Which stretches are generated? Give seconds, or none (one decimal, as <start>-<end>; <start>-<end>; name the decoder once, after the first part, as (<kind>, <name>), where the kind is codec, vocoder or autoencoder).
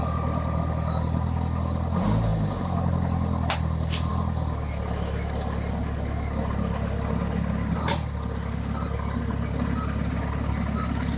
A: none